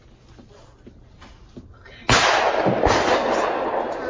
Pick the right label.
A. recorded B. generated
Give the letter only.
A